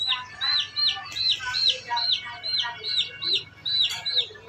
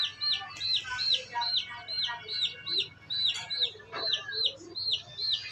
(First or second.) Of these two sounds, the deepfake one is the first